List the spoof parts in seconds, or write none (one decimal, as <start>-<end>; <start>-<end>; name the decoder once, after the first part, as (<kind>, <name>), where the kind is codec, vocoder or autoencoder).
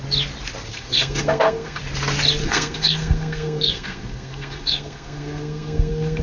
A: 0.7-1.8 (codec, SNAC); 2.4-6.2